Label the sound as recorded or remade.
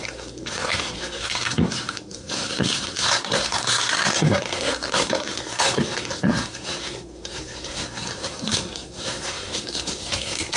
remade